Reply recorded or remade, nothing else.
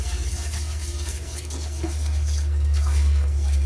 remade